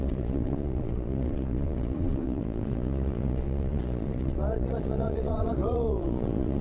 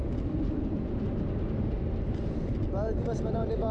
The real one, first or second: second